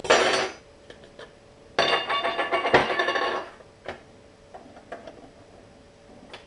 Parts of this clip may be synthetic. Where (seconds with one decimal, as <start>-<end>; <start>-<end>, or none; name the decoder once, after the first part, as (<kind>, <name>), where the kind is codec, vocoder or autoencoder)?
2.8-3.5 (autoencoder, DAC-VAE)